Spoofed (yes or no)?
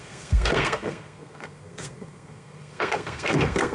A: yes